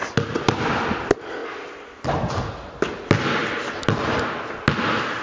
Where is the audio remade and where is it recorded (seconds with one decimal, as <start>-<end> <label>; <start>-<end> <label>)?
0.0-5.2 recorded